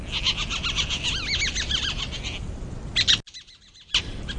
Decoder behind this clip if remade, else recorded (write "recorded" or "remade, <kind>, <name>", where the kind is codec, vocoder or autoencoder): recorded